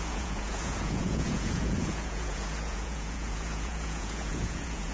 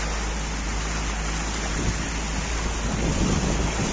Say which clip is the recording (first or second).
second